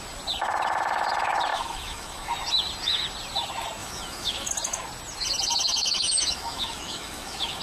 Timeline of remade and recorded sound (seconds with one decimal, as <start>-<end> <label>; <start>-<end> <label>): 0.0-1.5 recorded; 1.5-2.3 remade; 2.3-3.8 recorded; 3.8-4.5 remade; 4.5-5.8 recorded; 5.8-7.6 remade